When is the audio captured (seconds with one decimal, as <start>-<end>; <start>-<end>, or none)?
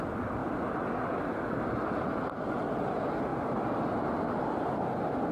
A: 0.0-5.3